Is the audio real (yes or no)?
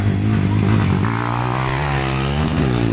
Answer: yes